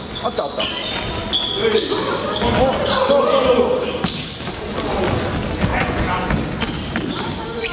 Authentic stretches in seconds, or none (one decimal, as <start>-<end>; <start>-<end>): 0.0-5.7; 6.3-7.7